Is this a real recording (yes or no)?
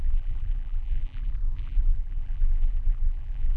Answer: no